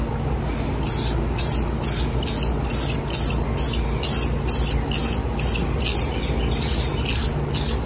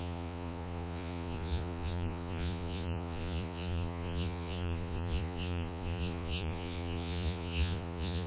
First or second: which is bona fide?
first